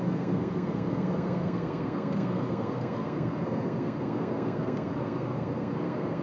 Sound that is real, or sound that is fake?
fake